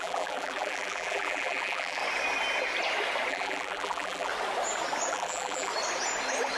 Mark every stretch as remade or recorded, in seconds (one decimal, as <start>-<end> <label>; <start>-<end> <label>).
0.0-2.0 remade; 2.0-3.3 recorded; 3.3-4.3 remade; 4.3-5.1 recorded; 5.1-5.7 remade; 5.7-6.6 recorded